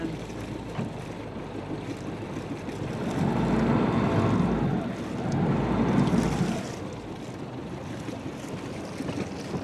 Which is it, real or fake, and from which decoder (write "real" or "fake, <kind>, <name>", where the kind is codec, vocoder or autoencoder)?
real